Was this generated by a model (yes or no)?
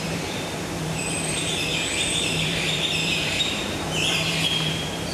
yes